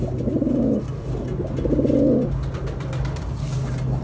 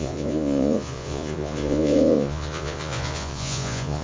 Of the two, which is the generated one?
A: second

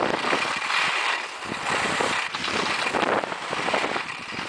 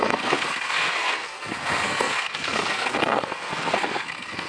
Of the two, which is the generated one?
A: second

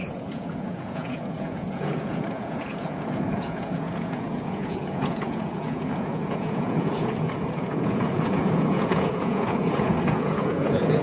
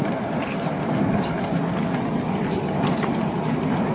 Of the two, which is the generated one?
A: first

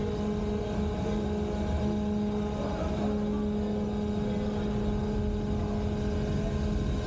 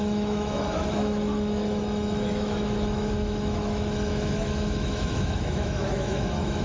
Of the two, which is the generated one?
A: second